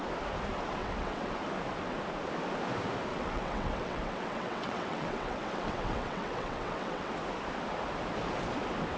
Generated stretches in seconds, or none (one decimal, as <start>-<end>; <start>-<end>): 0.8-1.3; 3.1-7.1